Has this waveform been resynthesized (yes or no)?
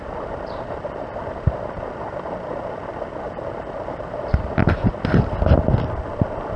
no